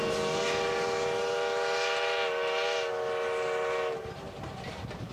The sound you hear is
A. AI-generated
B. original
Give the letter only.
B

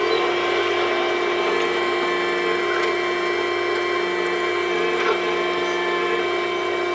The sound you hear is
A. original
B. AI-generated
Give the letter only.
A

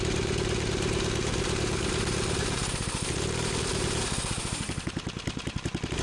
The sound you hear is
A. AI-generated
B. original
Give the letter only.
A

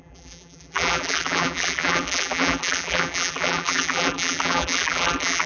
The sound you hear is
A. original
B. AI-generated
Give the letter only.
B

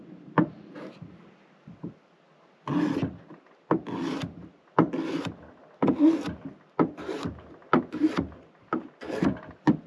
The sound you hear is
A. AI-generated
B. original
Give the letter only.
B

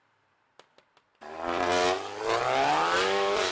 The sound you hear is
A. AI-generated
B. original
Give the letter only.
B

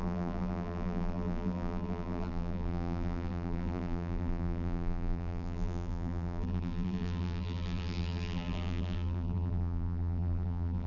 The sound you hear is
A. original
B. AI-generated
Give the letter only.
B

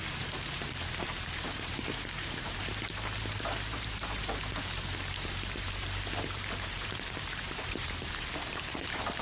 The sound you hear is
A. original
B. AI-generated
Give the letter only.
B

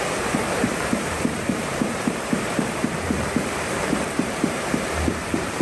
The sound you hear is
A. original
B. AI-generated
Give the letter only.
B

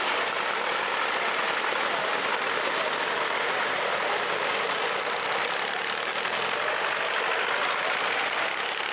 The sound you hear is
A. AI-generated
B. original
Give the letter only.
B